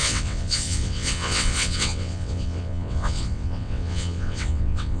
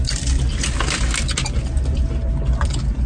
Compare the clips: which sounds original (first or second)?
second